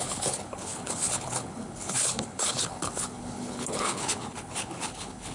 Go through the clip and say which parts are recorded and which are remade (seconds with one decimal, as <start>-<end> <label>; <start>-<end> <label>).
0.0-5.3 remade